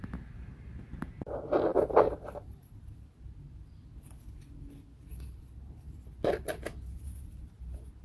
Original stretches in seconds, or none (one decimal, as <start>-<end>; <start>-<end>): 0.0-1.7; 2.8-5.1; 6.0-8.0

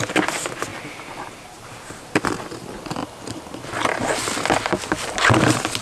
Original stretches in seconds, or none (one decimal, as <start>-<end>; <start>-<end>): 0.0-5.8

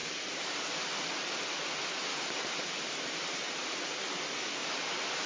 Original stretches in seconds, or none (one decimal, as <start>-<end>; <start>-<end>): 0.0-2.1; 3.7-4.6

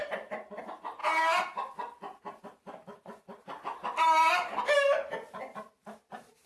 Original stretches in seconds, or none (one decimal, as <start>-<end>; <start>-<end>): 1.0-2.3

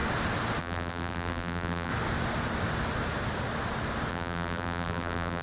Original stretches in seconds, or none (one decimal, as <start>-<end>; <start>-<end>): 0.0-0.6; 1.9-4.1

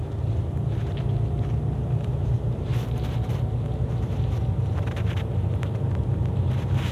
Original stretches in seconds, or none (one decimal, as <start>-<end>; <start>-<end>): 2.7-3.9